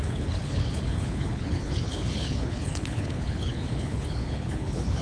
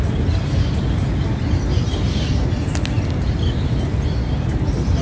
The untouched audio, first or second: second